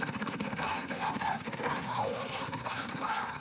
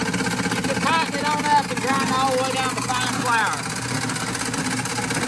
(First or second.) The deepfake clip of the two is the first